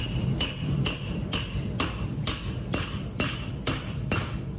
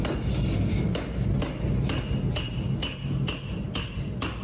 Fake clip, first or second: first